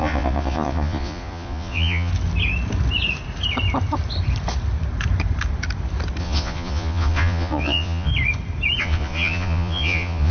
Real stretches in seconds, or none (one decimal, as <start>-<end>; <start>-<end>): 2.1-6.2; 8.1-8.8